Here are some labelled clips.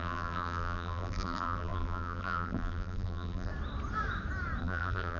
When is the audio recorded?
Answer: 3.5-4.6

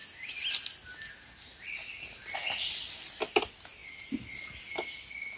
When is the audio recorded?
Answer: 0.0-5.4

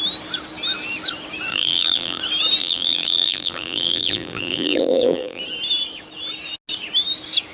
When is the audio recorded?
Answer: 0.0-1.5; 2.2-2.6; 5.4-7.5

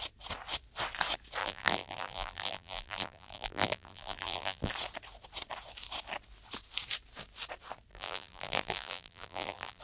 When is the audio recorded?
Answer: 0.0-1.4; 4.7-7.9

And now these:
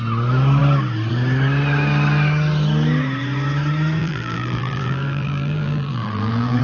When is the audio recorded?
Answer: 0.0-4.0

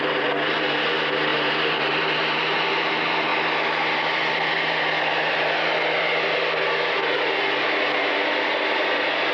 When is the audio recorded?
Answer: 0.0-1.3; 2.9-9.3

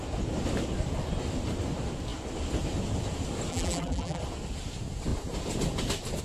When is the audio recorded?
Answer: 0.0-3.5; 4.2-6.2

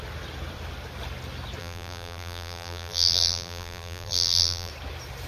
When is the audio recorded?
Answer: 0.0-1.6; 4.7-5.3